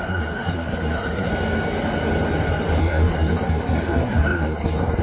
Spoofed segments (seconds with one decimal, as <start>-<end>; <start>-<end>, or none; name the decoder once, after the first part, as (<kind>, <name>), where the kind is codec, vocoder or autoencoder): 0.0-1.3 (codec, SNAC); 2.8-5.0